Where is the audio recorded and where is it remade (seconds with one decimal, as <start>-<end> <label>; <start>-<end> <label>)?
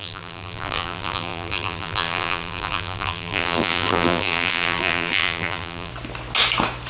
0.0-5.9 remade; 5.9-6.9 recorded